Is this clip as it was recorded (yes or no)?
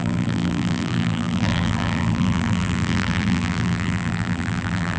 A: no